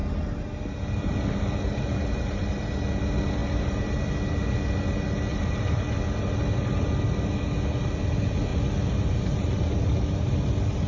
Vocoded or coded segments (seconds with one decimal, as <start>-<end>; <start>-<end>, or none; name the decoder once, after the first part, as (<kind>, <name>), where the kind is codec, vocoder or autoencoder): 0.0-2.7 (vocoder, BigVGAN v2); 3.4-4.1; 5.3-6.4; 8.5-9.7